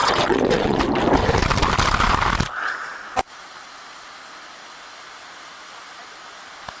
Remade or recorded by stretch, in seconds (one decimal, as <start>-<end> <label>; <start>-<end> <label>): 0.0-0.8 remade; 0.8-6.8 recorded